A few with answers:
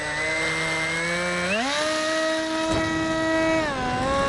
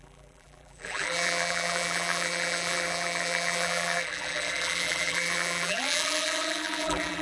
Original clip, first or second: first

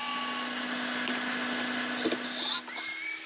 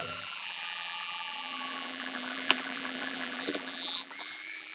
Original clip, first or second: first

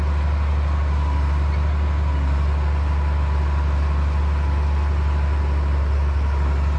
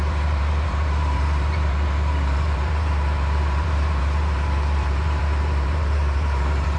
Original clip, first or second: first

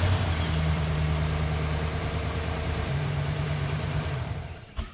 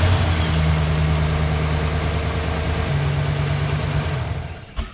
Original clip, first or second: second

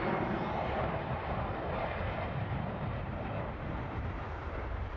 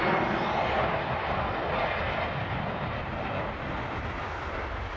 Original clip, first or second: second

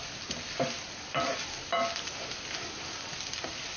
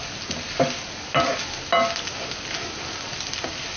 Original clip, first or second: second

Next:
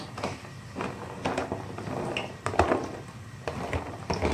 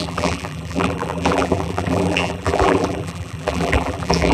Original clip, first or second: first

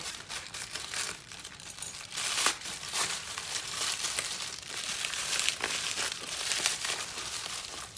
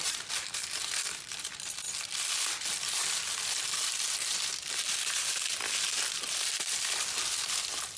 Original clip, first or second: second